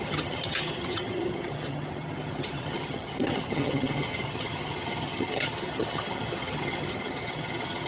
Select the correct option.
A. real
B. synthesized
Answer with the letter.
B